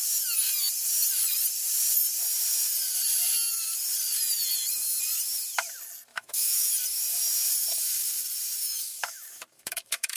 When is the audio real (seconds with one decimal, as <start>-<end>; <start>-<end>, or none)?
0.0-6.1; 6.7-8.6